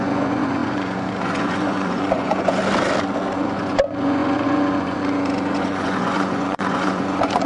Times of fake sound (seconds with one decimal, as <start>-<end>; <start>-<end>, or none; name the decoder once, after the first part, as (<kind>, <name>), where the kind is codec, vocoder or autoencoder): 0.0-2.6 (vocoder, Vocos); 3.3-7.5